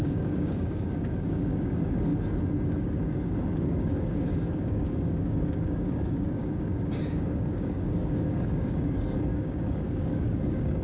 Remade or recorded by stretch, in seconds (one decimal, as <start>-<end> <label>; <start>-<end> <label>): 0.0-2.1 remade; 2.1-2.7 recorded; 2.7-10.8 remade